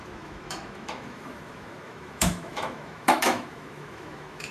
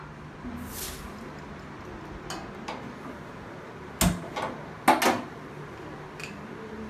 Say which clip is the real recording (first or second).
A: second